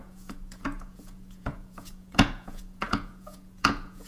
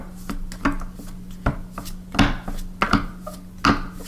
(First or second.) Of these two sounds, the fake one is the first